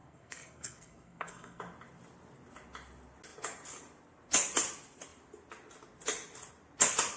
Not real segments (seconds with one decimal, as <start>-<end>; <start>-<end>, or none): 0.0-1.6